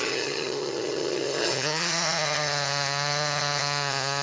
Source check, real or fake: fake